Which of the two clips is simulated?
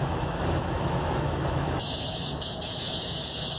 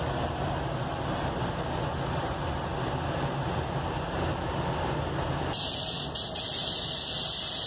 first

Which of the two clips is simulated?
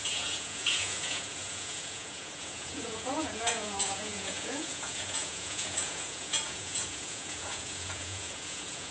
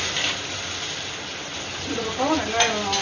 first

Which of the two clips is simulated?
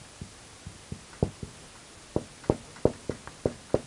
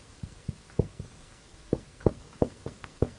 second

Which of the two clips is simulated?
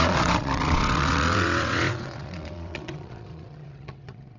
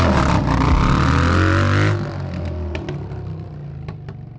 first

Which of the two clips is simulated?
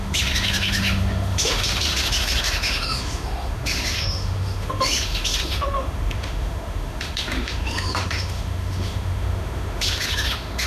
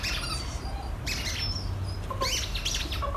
first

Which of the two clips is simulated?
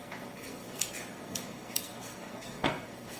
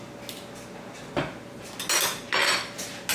first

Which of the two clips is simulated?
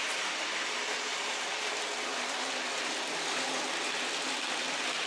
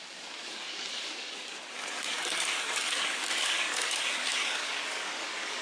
second